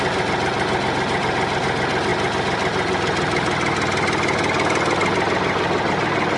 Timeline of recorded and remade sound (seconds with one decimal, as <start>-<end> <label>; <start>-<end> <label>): 0.0-6.4 recorded